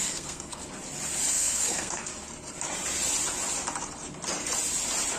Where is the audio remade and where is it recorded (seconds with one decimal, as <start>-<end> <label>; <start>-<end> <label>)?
0.0-0.6 remade; 0.6-1.3 recorded; 1.3-2.1 remade; 2.1-5.2 recorded